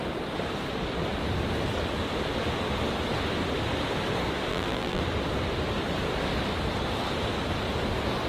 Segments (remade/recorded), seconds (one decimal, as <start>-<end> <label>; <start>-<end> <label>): 0.0-4.5 recorded; 4.5-5.0 remade; 5.0-8.3 recorded